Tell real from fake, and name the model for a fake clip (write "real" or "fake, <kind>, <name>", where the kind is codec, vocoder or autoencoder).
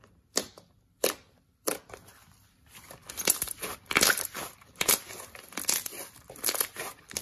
real